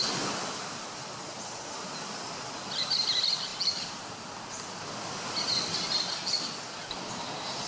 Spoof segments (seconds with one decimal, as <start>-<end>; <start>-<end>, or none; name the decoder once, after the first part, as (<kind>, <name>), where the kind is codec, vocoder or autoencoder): none